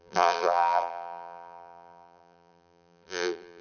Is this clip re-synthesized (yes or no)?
yes